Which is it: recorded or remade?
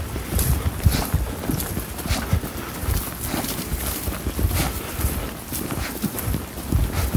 remade